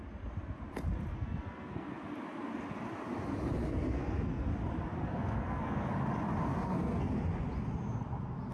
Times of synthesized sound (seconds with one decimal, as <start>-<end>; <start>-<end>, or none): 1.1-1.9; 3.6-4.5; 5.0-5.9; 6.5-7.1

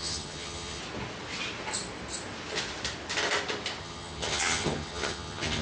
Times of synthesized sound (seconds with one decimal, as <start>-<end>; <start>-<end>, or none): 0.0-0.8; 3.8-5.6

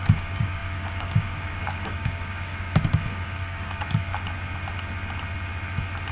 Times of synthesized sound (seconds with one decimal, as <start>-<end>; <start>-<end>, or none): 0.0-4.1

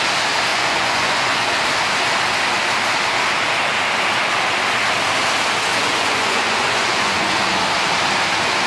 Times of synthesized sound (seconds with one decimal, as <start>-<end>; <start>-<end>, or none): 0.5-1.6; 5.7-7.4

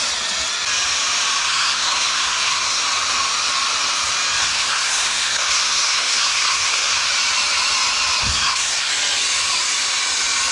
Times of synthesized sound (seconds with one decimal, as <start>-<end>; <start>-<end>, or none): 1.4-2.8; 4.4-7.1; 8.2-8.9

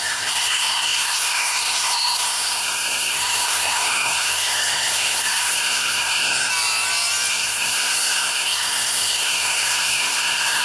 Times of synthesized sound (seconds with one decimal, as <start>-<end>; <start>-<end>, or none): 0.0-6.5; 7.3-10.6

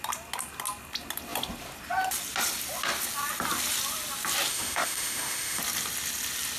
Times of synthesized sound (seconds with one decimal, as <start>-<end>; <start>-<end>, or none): 4.5-5.6